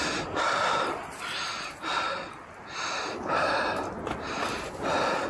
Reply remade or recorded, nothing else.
recorded